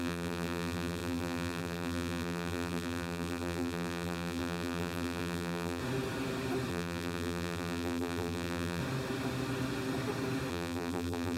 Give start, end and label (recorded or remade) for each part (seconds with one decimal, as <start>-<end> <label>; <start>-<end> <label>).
0.0-5.8 remade; 5.8-6.7 recorded; 6.7-8.8 remade; 8.8-10.5 recorded; 10.5-11.4 remade